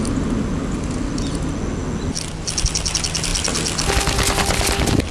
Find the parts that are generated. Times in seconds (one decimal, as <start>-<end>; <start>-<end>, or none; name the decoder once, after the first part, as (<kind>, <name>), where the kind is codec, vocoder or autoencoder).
none